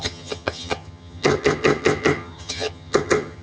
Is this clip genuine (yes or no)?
no